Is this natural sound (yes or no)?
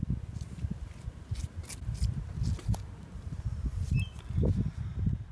yes